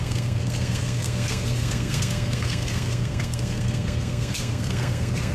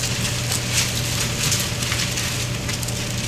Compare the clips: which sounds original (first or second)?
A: second